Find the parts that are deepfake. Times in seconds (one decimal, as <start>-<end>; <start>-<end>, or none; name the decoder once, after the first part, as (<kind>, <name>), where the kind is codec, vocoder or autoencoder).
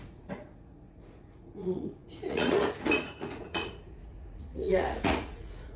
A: 0.0-5.8 (vocoder, Vocos)